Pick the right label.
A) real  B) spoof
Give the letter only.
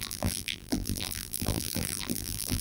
B